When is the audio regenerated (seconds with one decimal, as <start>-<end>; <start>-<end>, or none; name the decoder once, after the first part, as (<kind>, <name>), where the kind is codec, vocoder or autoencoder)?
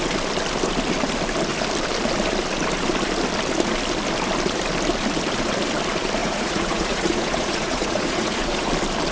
6.2-8.7 (vocoder, Vocos)